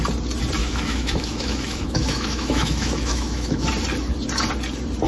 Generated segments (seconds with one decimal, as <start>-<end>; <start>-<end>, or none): 0.6-3.7